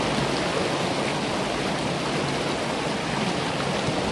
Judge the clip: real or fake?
real